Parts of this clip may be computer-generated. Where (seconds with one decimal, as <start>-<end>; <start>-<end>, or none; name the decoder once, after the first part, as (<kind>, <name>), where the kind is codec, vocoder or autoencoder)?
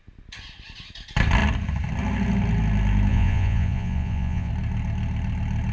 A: 3.1-4.5 (vocoder, Vocos)